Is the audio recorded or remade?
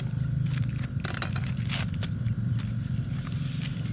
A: remade